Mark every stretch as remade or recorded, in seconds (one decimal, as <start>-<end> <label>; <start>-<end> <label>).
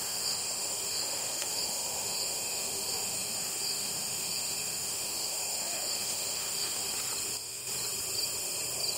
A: 0.0-6.9 remade; 6.9-9.0 recorded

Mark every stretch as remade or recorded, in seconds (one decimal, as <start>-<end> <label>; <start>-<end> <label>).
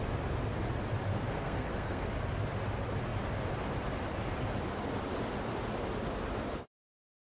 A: 0.0-1.1 recorded; 1.1-2.1 remade; 2.1-7.4 recorded